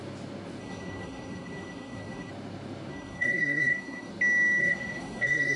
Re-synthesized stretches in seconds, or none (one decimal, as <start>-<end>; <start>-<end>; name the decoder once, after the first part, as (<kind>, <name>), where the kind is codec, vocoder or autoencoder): 0.6-2.3 (codec, SNAC); 2.9-4.1; 4.6-5.6